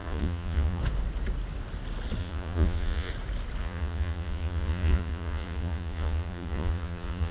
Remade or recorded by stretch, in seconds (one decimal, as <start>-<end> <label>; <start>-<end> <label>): 0.0-0.8 remade; 0.8-2.2 recorded; 2.2-3.1 remade; 3.1-3.6 recorded; 3.6-7.3 remade